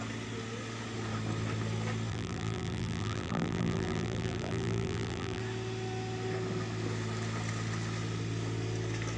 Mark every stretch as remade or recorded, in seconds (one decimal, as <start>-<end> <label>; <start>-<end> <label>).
0.0-2.1 recorded; 2.1-5.4 remade; 5.4-9.2 recorded